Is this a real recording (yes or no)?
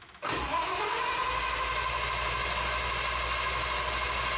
yes